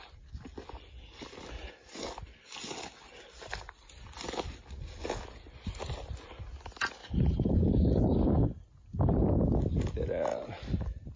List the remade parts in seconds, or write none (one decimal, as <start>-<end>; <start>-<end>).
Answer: 7.0-7.7; 10.3-11.2